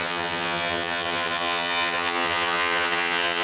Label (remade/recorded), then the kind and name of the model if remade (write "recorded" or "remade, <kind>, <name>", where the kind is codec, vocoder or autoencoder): remade, vocoder, HiFi-GAN